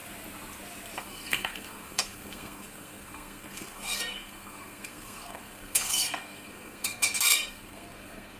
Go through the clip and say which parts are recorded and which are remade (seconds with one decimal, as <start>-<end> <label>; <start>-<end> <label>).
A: 0.0-1.0 recorded; 1.0-8.4 remade